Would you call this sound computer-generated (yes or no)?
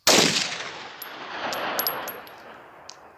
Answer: no